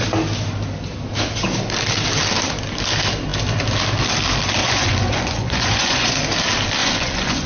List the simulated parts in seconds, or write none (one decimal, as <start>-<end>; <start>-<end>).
4.6-6.1; 6.8-7.5

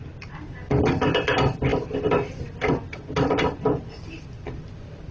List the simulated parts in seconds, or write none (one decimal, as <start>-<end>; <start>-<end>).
none

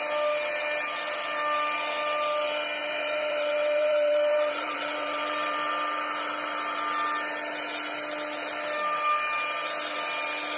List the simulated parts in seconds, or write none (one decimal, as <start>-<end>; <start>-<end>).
2.8-5.7